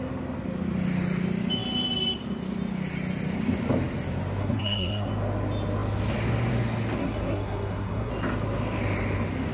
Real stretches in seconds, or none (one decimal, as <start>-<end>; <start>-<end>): 0.0-4.4; 5.1-7.0; 8.1-9.5